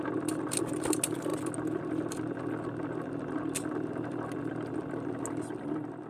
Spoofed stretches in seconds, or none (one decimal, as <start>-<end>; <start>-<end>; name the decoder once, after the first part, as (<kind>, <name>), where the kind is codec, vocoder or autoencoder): none